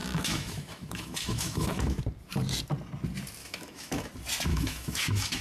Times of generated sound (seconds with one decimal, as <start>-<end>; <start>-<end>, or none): 0.0-2.0; 3.4-4.1; 4.5-5.4